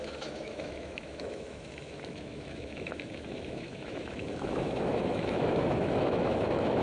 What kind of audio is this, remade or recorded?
remade